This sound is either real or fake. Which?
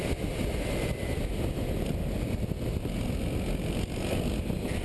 real